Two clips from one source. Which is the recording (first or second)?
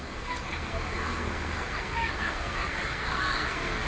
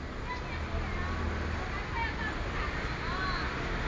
second